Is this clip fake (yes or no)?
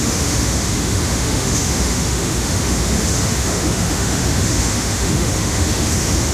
yes